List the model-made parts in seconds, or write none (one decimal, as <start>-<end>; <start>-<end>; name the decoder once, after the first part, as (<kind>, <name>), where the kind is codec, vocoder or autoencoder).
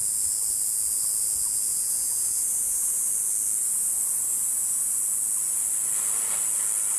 1.7-3.1 (vocoder, Vocos); 3.6-4.9